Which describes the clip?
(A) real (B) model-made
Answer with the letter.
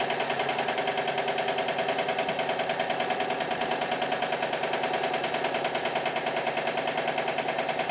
A